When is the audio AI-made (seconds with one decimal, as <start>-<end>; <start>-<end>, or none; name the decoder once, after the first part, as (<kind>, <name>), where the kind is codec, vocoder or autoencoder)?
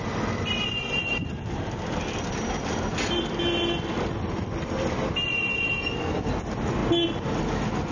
none